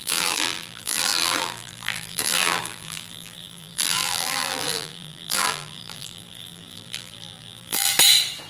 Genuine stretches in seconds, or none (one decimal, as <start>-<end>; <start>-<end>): 7.9-8.5